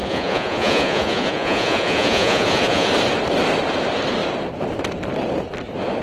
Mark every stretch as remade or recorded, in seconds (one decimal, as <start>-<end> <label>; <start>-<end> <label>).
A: 0.0-2.9 remade; 2.9-6.0 recorded

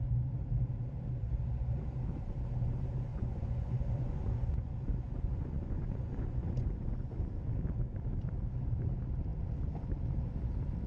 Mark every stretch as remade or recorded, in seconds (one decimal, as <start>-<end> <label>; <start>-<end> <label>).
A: 0.0-3.1 recorded; 3.1-7.1 remade; 7.1-10.9 recorded